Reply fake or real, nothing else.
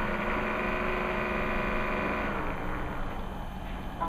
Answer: real